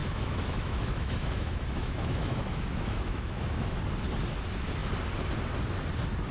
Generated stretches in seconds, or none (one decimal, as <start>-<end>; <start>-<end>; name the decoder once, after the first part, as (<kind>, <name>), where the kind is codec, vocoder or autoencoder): 0.0-3.8 (autoencoder, DAC-VAE)